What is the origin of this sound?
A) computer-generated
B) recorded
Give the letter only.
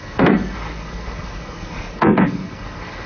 A